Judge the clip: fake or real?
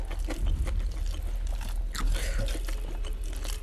real